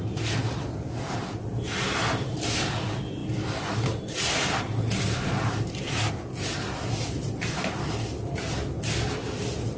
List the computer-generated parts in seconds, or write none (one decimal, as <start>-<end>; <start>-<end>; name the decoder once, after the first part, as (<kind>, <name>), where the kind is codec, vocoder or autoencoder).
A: none